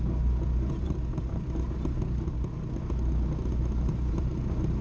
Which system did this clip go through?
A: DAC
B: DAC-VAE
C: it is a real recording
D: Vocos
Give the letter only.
C